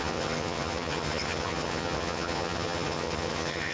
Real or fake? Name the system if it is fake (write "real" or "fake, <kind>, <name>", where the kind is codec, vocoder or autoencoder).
fake, vocoder, HiFi-GAN